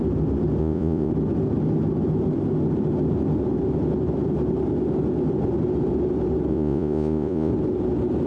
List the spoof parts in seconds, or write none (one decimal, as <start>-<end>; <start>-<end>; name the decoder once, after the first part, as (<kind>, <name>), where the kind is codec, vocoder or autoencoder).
0.6-1.1 (vocoder, Vocos); 6.5-7.5